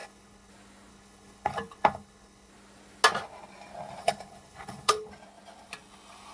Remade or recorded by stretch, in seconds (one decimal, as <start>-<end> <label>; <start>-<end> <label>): 0.0-0.5 remade; 0.5-0.9 recorded; 0.9-2.5 remade; 2.5-4.0 recorded; 4.0-5.1 remade; 5.1-6.3 recorded